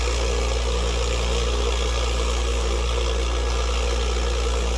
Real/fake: real